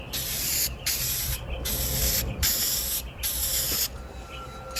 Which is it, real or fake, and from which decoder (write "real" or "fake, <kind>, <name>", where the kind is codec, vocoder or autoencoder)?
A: fake, vocoder, BigVGAN v2